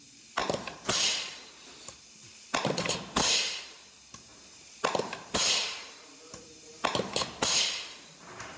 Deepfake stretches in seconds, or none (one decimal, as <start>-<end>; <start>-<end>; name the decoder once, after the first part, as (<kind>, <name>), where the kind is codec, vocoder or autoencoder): 0.4-3.6 (vocoder, BigVGAN v2); 4.3-7.6